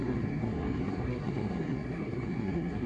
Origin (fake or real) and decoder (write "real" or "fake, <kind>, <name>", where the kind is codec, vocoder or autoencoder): fake, codec, SNAC